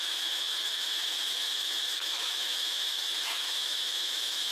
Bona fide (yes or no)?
no